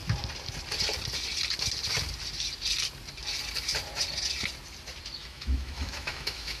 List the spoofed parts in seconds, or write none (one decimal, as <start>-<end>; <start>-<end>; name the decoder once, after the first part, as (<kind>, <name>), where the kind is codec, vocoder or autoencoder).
5.2-6.6 (autoencoder, DAC-VAE)